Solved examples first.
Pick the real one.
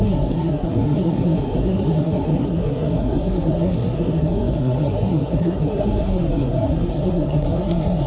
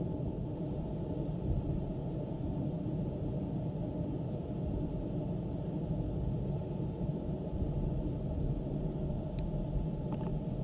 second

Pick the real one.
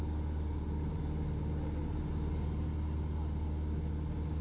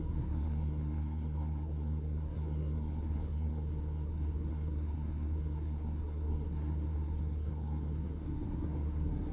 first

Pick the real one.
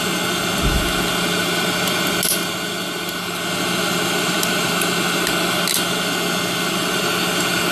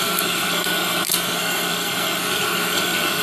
first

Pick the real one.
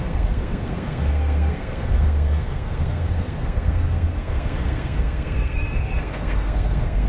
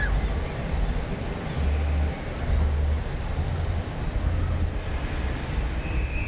second